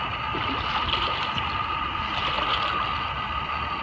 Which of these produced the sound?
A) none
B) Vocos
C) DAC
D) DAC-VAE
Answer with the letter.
A